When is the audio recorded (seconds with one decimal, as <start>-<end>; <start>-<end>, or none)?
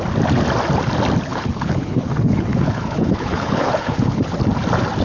0.0-1.3; 4.3-5.0